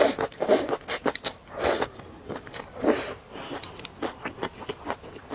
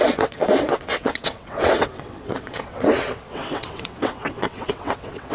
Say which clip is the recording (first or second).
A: first